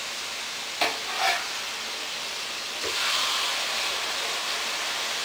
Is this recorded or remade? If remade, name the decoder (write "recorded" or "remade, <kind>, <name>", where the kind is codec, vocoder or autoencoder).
recorded